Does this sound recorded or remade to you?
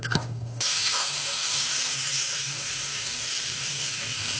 remade